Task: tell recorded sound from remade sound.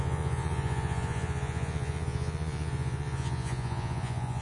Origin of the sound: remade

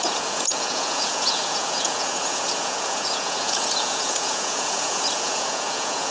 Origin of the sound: remade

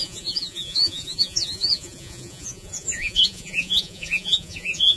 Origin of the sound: remade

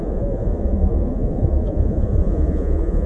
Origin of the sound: remade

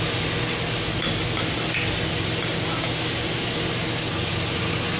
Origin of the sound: recorded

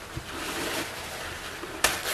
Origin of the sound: recorded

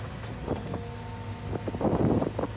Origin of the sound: recorded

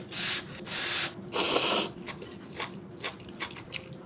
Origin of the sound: recorded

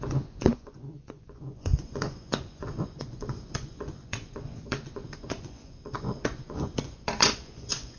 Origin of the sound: remade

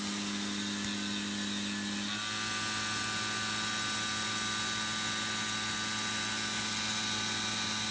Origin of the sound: recorded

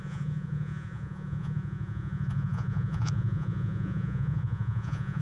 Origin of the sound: remade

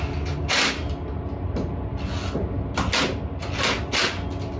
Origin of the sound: recorded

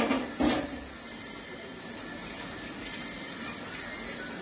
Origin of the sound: recorded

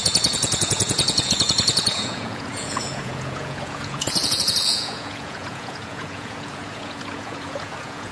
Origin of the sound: remade